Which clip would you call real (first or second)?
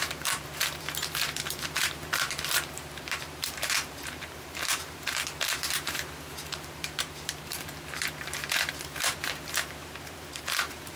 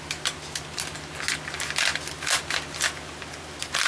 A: second